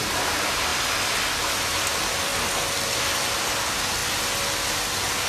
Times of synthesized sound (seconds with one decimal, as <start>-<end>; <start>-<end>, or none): none